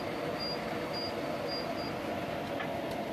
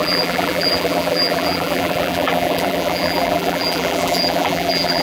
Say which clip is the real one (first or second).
first